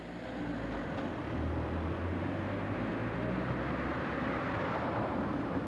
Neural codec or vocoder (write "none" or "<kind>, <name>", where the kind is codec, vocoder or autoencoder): none